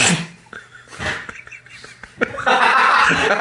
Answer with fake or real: real